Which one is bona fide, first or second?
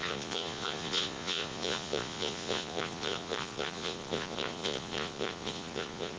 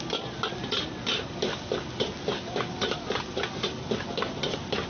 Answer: second